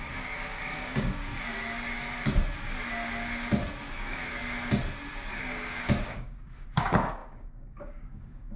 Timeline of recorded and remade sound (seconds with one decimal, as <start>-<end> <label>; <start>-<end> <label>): 0.0-1.3 remade; 1.3-3.9 recorded; 3.9-4.4 remade; 4.4-5.1 recorded; 5.1-8.6 remade